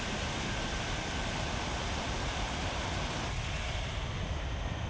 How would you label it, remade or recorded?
recorded